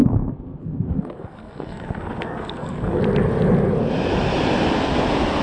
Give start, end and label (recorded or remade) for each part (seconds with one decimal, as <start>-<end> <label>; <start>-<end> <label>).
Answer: 0.0-3.0 remade; 3.0-5.4 recorded